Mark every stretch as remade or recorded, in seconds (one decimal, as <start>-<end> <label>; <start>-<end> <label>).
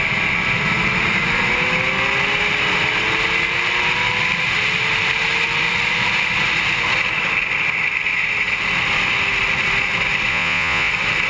0.0-10.3 recorded; 10.3-10.9 remade; 10.9-11.3 recorded